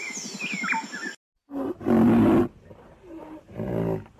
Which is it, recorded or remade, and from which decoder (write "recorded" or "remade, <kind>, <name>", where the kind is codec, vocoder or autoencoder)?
recorded